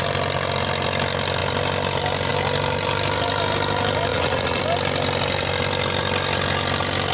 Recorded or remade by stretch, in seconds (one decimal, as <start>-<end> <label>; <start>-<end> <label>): 0.0-4.1 recorded; 4.1-4.6 remade; 4.6-7.1 recorded